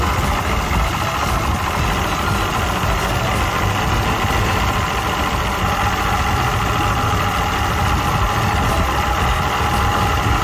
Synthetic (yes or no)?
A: no